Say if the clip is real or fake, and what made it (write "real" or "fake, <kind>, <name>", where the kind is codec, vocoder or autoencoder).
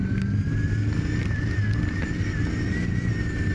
real